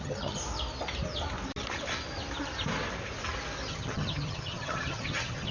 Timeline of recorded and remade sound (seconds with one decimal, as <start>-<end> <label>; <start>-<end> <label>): 0.0-0.4 remade; 0.4-3.7 recorded; 3.7-5.5 remade